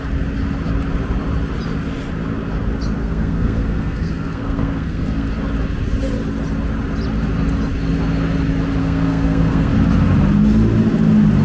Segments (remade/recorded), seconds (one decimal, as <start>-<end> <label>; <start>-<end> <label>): 0.0-3.0 recorded; 3.0-5.3 remade; 5.3-8.8 recorded; 8.8-9.7 remade; 9.7-11.4 recorded